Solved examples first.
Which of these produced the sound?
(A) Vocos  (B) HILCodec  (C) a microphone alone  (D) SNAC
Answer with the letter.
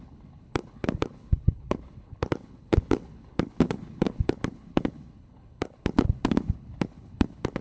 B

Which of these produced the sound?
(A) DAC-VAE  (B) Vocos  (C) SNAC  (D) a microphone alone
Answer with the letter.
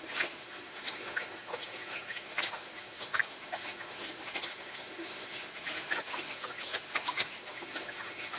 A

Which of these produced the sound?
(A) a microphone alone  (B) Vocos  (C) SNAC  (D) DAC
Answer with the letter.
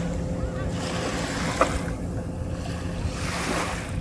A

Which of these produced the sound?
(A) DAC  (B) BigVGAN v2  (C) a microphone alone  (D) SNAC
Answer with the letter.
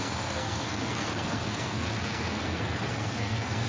D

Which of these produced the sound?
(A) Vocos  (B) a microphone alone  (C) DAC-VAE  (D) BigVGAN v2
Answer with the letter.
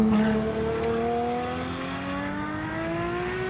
B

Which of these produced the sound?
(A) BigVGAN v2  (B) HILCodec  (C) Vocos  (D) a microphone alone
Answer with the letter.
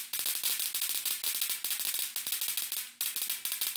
D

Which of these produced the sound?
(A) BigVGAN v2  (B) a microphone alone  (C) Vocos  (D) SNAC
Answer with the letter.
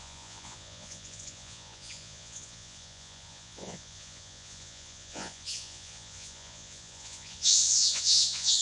C